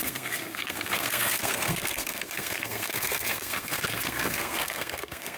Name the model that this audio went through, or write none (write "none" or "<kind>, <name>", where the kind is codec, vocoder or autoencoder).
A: codec, SNAC